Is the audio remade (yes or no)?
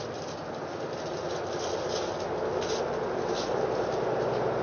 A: no